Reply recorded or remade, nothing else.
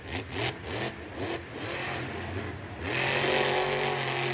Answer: recorded